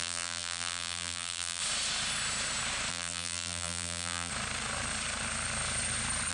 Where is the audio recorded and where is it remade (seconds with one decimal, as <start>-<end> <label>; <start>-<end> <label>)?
0.0-1.6 remade; 1.6-2.9 recorded; 2.9-4.3 remade; 4.3-6.3 recorded